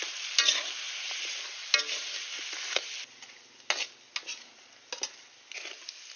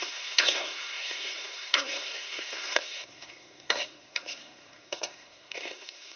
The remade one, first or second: second